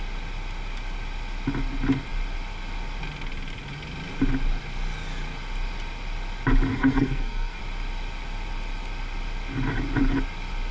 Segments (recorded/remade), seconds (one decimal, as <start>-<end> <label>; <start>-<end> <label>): 0.0-6.7 recorded; 6.7-7.6 remade; 7.6-10.7 recorded